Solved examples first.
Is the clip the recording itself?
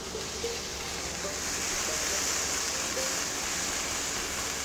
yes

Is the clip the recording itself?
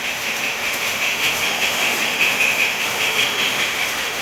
no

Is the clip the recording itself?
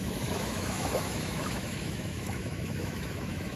no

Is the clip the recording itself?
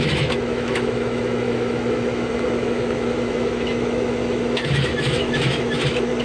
no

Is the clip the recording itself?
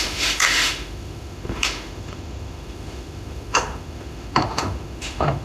no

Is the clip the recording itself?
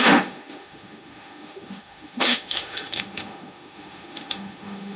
no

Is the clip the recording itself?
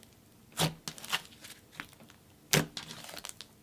yes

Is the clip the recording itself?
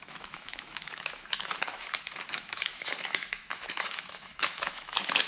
no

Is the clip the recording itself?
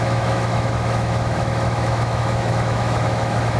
no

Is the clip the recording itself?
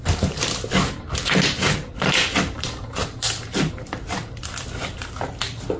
yes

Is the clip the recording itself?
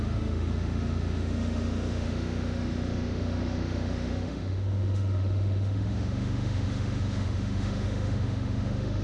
no